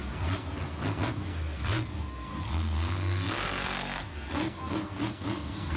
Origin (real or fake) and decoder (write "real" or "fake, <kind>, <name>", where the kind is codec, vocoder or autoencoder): fake, codec, SNAC